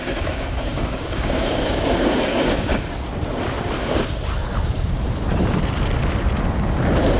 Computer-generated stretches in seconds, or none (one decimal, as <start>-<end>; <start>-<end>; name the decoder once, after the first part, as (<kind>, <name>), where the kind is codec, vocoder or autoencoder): 0.0-2.7 (codec, DAC)